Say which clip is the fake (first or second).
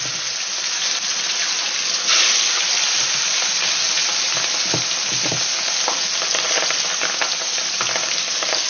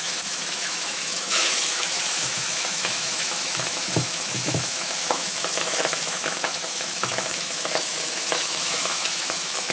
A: second